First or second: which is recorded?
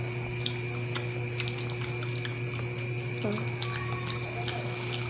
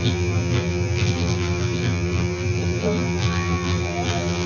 first